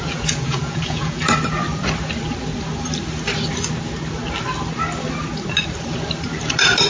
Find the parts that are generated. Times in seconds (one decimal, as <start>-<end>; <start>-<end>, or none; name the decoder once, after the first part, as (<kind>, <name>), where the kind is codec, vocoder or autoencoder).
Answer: 0.0-1.2 (vocoder, Vocos)